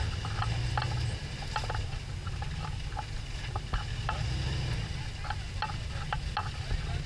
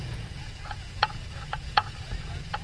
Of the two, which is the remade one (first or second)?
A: second